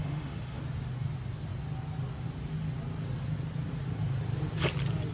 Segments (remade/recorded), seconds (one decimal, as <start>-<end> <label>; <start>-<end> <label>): 0.0-0.6 remade; 0.6-5.1 recorded